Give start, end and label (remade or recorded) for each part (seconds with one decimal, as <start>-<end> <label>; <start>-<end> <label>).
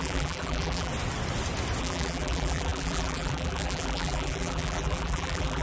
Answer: 0.0-0.9 remade; 0.9-1.8 recorded; 1.8-5.6 remade